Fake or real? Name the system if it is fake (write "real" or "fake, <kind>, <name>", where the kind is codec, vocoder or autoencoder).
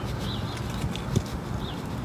real